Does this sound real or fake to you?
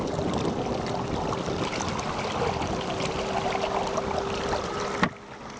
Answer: real